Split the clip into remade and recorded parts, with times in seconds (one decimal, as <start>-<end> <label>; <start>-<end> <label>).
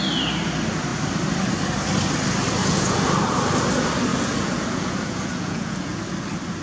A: 0.0-2.6 recorded; 2.6-3.1 remade; 3.1-4.1 recorded; 4.1-6.0 remade; 6.0-6.6 recorded